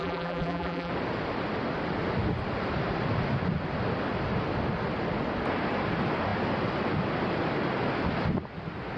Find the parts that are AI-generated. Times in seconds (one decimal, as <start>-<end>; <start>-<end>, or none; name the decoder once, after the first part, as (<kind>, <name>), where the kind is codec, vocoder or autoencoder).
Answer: 0.0-0.9 (vocoder, BigVGAN v2)